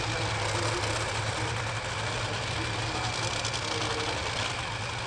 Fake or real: real